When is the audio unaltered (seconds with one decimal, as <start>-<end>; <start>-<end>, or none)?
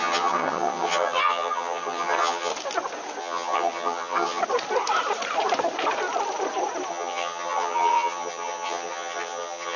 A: 2.5-3.2; 4.4-6.9